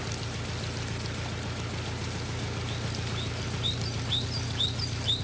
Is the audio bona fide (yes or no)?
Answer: yes